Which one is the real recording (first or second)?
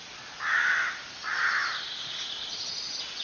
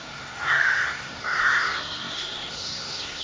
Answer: first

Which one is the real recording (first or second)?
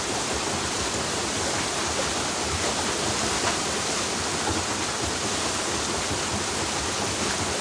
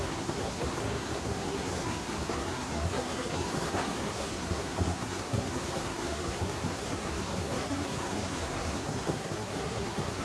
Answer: first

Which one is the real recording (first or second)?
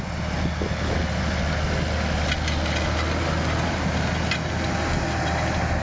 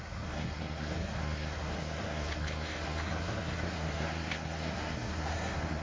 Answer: first